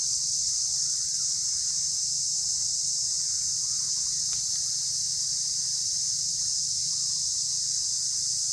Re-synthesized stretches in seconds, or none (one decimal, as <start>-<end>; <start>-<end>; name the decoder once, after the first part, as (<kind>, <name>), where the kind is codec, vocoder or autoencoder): 0.0-1.2 (vocoder, WaveNeXt)